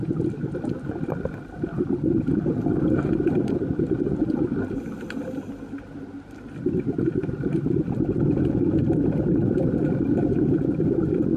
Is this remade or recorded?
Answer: remade